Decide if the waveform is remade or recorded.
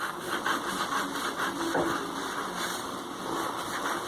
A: remade